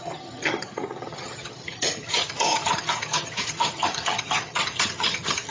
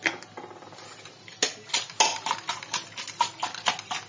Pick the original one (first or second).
second